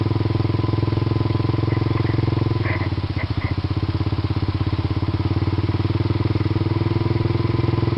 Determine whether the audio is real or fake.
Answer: real